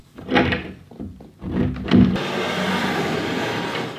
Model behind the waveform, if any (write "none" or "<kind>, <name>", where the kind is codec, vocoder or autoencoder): vocoder, BigVGAN v2